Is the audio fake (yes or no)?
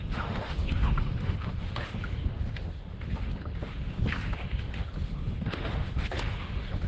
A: yes